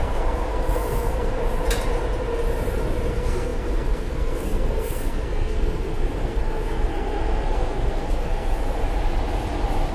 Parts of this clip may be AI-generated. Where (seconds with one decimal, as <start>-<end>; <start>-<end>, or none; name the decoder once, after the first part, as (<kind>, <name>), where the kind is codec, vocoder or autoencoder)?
0.0-1.4 (codec, SNAC); 3.1-8.8